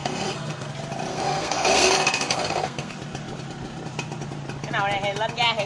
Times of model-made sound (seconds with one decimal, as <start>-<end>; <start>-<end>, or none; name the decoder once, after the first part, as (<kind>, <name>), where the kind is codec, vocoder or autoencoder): 0.0-0.7 (codec, SNAC); 1.1-2.9